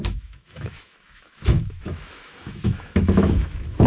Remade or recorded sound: remade